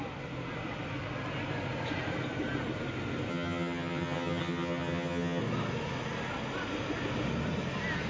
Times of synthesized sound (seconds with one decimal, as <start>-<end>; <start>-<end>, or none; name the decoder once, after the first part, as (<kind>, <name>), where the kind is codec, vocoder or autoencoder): 3.3-5.4 (vocoder, HiFi-GAN)